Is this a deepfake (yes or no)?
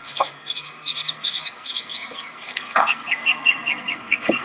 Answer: yes